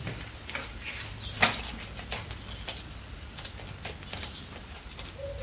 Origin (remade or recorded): recorded